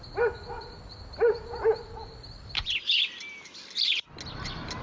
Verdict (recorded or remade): recorded